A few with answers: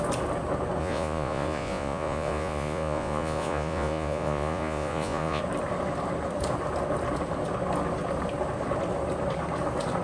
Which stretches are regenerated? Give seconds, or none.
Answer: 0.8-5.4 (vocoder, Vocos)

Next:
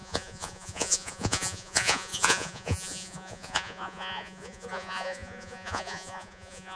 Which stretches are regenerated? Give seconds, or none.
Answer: 0.0-6.8 (vocoder, Vocos)

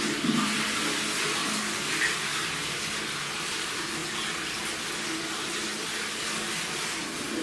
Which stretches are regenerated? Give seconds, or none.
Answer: 1.4-1.9 (codec, DAC); 2.3-2.8

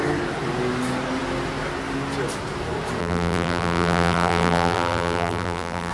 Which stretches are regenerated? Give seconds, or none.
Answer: 3.0-5.9 (vocoder, BigVGAN v2)

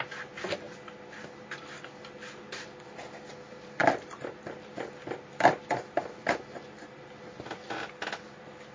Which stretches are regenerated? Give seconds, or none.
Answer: none